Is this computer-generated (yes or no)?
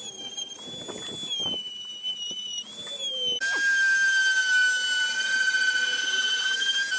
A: no